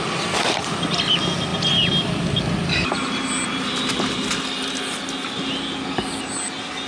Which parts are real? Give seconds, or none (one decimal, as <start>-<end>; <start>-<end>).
0.0-6.9